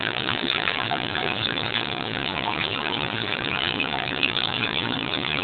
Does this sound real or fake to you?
fake